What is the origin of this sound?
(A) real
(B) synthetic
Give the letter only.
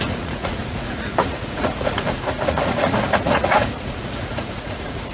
B